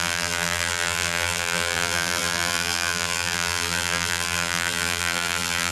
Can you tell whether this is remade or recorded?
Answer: remade